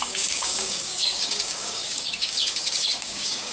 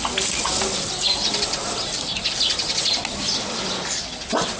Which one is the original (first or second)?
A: second